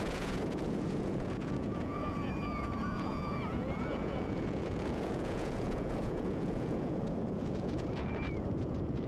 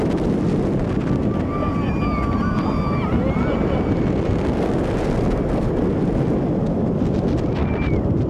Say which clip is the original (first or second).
second